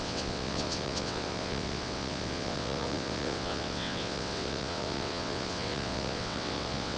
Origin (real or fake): fake